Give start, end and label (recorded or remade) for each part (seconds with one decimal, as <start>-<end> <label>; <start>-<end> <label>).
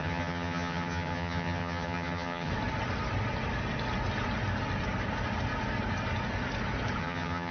0.0-2.5 remade; 2.5-7.0 recorded; 7.0-7.5 remade